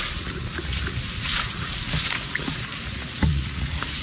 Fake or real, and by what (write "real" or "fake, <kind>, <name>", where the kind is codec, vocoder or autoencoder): fake, vocoder, Vocos